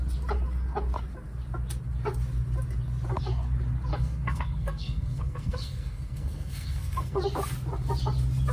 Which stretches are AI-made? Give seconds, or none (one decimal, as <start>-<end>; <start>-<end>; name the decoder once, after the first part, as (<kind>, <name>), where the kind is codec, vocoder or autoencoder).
3.9-7.2 (codec, SNAC)